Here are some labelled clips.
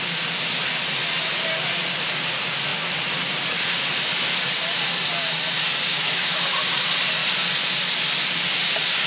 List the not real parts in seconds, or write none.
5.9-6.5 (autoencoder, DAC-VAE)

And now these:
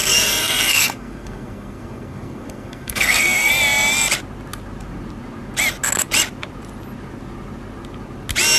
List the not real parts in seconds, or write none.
0.0-3.5 (codec, SNAC)